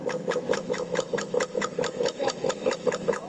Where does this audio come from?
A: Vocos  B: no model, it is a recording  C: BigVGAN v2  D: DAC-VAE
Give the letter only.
D